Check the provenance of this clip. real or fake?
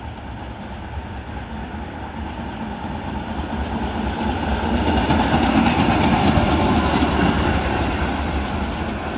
real